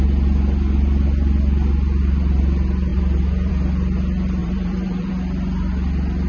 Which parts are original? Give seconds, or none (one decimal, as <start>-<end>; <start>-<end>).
0.0-2.9; 3.5-4.4; 5.1-6.3